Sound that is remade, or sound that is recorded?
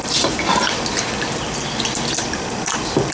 recorded